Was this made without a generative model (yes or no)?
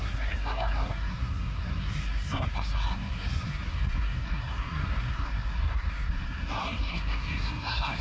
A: no